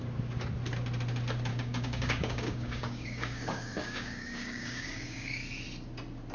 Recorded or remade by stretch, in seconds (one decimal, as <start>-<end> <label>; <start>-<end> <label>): 0.0-1.5 recorded; 1.5-5.3 remade; 5.3-6.3 recorded